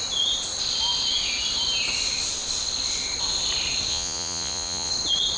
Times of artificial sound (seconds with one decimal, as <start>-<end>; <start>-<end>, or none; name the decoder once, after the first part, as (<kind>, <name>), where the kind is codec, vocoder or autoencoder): 3.9-4.9 (vocoder, Vocos)